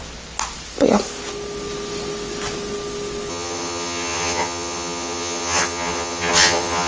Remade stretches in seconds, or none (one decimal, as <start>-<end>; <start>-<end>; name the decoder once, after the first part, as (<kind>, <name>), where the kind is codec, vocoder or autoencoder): 3.3-6.9 (vocoder, HiFi-GAN)